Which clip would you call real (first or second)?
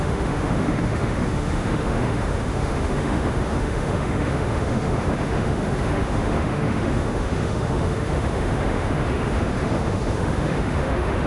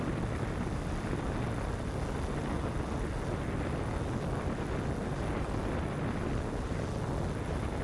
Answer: second